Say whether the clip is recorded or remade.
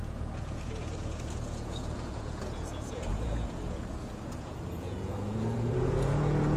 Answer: remade